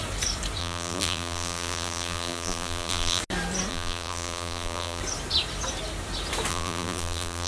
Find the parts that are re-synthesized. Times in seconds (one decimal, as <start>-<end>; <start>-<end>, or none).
0.6-3.2; 3.7-5.0; 6.5-7.5